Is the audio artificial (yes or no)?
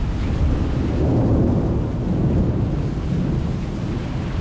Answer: no